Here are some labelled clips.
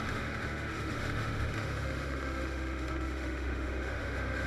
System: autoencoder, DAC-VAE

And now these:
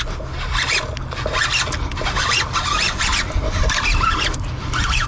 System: none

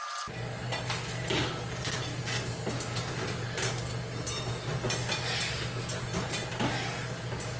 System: none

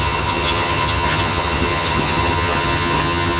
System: vocoder, HiFi-GAN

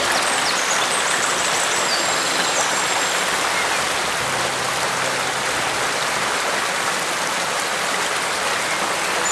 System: none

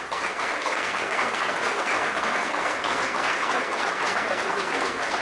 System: codec, SNAC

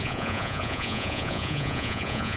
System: vocoder, Vocos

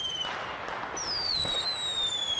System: none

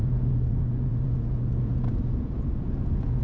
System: vocoder, Vocos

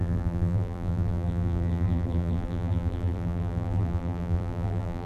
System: vocoder, BigVGAN v2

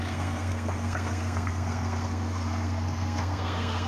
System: codec, SNAC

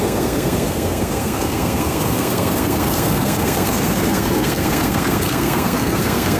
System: codec, SNAC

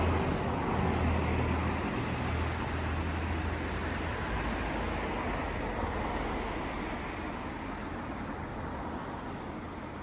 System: none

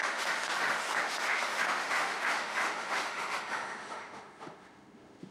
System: autoencoder, DAC-VAE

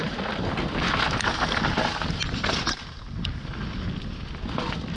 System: none